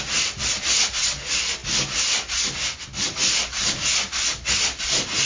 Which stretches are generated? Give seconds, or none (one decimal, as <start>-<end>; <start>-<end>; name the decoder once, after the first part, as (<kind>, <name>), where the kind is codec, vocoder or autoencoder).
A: none